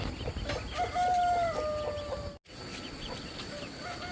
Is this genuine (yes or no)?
yes